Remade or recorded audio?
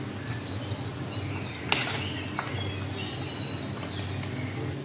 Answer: recorded